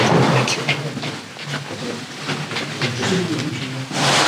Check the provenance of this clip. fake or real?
real